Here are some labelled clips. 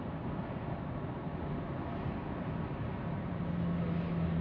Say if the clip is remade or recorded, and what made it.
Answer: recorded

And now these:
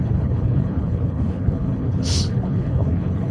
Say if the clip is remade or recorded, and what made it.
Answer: remade, codec, HILCodec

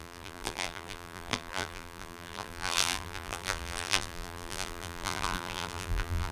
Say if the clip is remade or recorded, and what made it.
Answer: remade, vocoder, BigVGAN v2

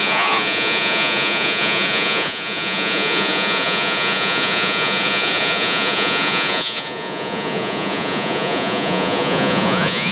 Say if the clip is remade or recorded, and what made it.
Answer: remade, vocoder, Vocos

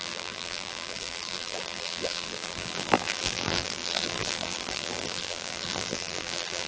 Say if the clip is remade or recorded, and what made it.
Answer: remade, vocoder, BigVGAN v2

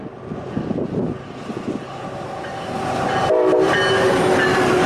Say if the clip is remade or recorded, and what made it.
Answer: recorded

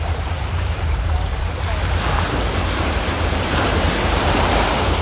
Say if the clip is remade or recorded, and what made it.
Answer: remade, vocoder, BigVGAN v2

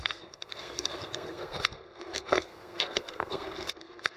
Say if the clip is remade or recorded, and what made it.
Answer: remade, codec, SNAC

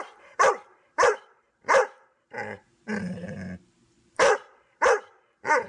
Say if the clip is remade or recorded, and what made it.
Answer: remade, vocoder, BigVGAN v2